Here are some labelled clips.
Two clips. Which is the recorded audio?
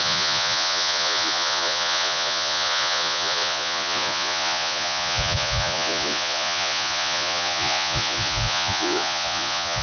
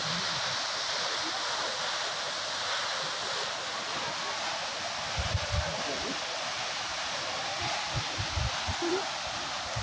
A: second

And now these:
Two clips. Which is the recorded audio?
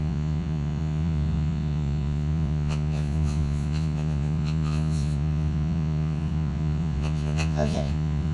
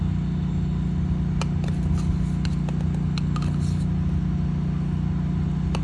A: second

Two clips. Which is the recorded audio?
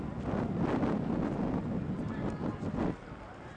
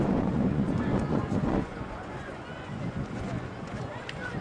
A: first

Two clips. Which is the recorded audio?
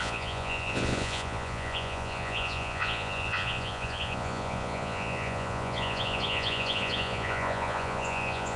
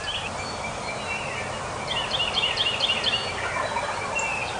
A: second